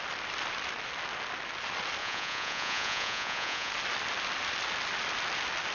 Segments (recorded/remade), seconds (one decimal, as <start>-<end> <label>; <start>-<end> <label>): 0.0-2.0 recorded; 2.0-3.7 remade; 3.7-5.7 recorded